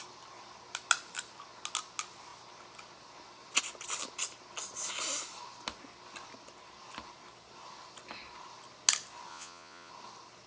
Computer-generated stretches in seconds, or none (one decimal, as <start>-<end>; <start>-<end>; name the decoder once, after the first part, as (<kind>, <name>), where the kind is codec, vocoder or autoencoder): 9.3-9.9 (vocoder, Vocos)